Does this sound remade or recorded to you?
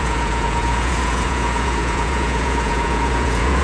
remade